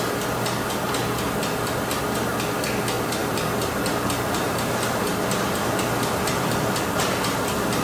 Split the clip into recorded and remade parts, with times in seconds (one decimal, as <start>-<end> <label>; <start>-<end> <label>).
0.0-7.8 recorded